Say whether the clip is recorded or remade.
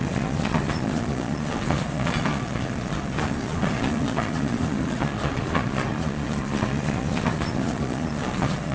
remade